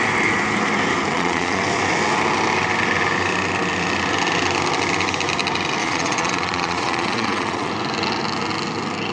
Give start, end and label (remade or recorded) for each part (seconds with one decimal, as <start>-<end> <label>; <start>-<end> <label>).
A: 0.0-1.1 recorded; 1.1-1.6 remade; 1.6-5.8 recorded; 5.8-7.7 remade; 7.7-9.1 recorded